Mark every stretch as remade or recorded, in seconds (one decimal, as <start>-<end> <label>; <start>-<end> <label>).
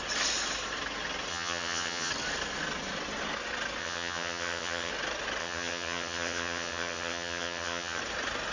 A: 0.0-1.3 recorded; 1.3-2.1 remade; 2.1-3.8 recorded; 3.8-4.9 remade; 4.9-5.4 recorded; 5.4-8.0 remade; 8.0-8.5 recorded